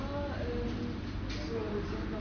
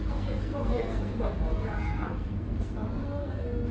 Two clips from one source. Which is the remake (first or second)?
second